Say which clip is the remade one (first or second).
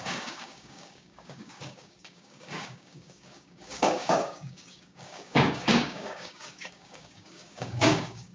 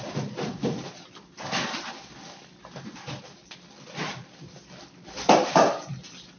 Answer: first